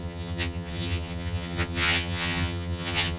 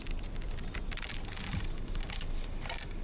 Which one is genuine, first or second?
second